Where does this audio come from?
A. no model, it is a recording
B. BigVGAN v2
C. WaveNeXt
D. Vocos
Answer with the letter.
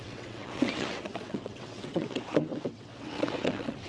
C